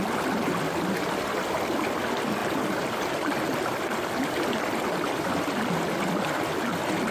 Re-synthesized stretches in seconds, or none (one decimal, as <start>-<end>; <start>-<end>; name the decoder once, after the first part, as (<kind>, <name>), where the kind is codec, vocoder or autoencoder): none